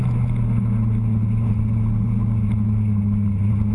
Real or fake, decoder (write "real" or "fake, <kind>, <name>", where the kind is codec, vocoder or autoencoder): real